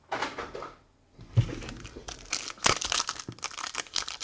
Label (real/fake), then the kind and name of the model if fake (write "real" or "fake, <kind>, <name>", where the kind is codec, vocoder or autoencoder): real